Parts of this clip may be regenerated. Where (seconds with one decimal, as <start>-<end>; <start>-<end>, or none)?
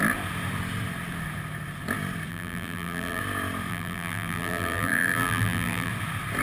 2.3-3.2; 3.7-5.9